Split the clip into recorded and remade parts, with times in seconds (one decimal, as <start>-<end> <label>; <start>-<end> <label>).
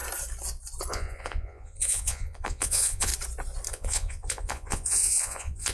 0.0-0.9 recorded; 0.9-3.1 remade; 3.1-3.7 recorded; 3.7-5.7 remade